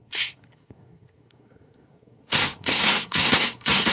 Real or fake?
fake